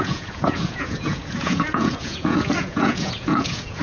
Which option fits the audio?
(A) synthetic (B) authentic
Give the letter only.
A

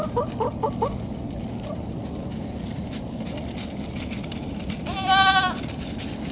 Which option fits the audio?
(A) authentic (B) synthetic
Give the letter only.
A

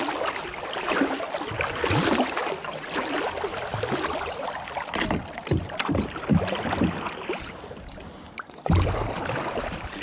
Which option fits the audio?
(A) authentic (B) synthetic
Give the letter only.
A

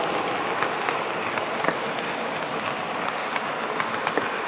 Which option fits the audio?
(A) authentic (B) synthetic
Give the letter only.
A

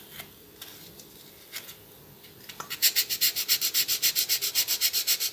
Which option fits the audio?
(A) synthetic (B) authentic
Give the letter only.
B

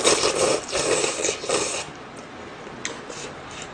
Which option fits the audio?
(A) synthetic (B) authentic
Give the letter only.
B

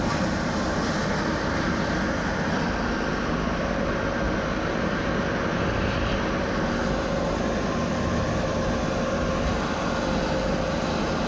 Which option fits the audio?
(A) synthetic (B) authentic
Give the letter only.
B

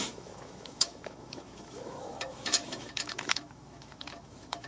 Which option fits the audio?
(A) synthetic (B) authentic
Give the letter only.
A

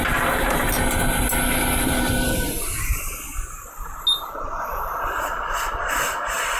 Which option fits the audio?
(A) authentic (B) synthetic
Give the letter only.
A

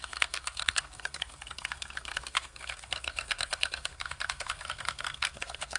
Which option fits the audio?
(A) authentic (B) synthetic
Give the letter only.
B